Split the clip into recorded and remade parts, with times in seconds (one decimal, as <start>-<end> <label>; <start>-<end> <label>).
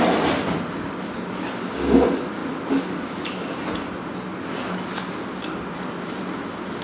0.0-6.8 recorded